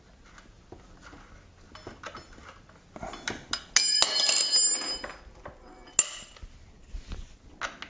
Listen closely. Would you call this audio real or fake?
real